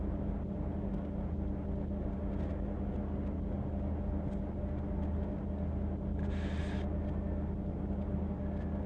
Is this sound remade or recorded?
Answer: recorded